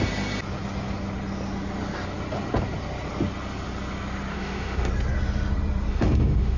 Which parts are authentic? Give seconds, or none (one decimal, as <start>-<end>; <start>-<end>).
0.0-4.3; 4.9-5.9